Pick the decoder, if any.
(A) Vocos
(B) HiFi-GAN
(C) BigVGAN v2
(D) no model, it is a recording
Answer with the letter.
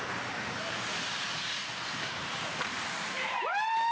C